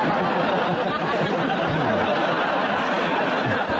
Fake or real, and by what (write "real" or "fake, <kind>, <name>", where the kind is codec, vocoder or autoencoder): real